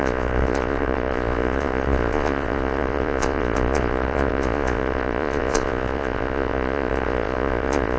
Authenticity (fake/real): fake